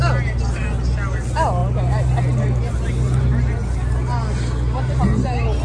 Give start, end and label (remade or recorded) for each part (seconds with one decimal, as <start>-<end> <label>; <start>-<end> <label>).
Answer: 0.0-5.6 recorded